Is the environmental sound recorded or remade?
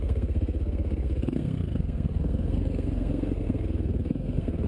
remade